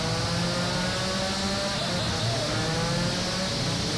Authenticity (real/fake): real